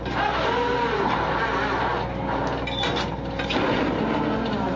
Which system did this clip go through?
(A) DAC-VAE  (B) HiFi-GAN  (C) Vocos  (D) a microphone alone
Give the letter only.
D